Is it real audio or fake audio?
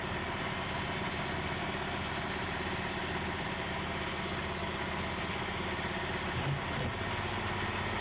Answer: real